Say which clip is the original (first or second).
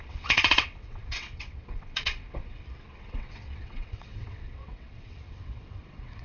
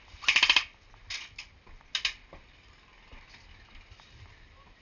second